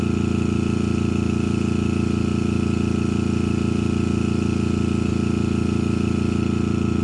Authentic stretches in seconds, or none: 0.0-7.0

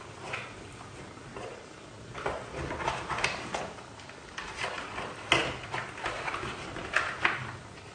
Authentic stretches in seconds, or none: 0.0-7.9